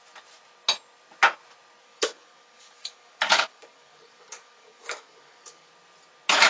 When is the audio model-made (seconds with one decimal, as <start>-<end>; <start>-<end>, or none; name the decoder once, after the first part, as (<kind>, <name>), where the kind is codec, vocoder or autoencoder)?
1.8-5.7 (codec, DAC)